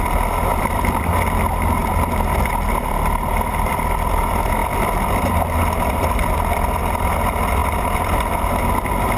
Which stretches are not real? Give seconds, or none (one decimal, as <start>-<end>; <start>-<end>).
0.5-1.1; 1.8-4.1; 7.6-8.6